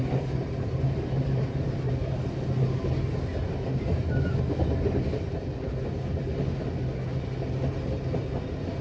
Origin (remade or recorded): recorded